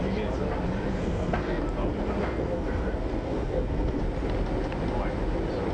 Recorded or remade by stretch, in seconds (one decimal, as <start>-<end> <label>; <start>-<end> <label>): 0.0-1.0 recorded; 1.0-1.6 remade; 1.6-2.2 recorded; 2.2-4.0 remade; 4.0-5.7 recorded